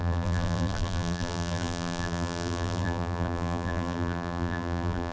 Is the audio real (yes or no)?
no